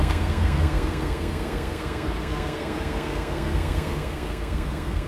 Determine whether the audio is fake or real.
fake